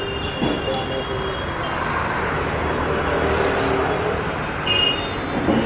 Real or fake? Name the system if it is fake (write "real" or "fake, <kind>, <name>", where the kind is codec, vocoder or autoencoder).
real